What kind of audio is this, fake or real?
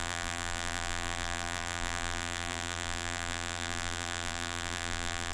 fake